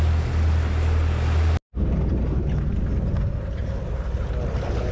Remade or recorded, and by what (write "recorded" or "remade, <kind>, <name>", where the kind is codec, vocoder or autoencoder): recorded